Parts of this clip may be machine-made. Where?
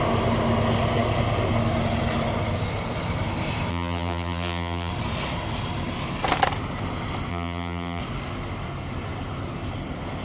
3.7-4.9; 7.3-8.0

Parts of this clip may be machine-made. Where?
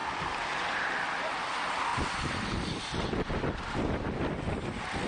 1.9-5.1